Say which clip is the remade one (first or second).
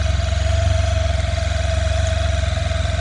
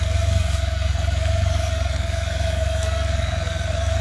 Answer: second